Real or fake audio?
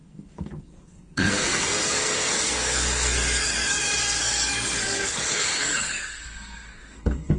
fake